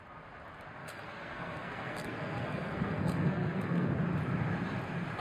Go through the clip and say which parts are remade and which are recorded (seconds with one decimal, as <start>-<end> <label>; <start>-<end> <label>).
0.0-0.8 recorded; 0.8-3.9 remade; 3.9-5.2 recorded